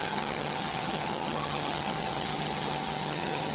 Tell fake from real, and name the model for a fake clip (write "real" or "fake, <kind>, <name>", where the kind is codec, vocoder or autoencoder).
fake, vocoder, HiFi-GAN